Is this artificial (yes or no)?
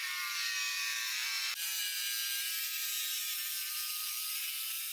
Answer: yes